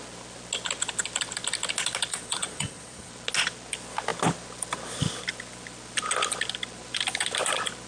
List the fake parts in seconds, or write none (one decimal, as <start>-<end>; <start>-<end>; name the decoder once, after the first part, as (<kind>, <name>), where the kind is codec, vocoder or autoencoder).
2.1-3.1 (vocoder, Vocos)